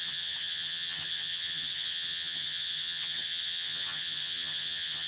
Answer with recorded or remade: remade